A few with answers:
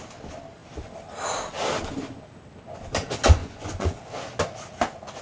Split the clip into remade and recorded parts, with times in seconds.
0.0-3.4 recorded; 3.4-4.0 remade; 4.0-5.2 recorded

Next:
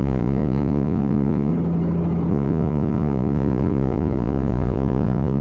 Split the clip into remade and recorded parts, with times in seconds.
0.0-1.5 remade; 1.5-2.3 recorded; 2.3-5.4 remade